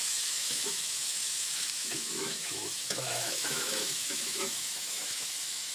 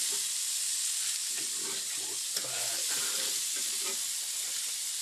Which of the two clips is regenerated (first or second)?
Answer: first